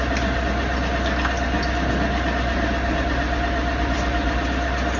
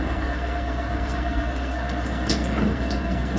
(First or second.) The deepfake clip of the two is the second